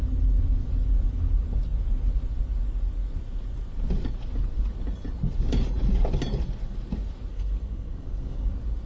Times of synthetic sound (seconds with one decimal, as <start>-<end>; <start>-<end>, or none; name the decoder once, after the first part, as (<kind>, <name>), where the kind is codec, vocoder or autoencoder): 7.3-8.5 (codec, SNAC)